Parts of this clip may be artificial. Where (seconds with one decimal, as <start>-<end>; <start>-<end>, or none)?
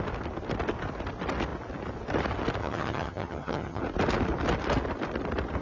2.6-3.8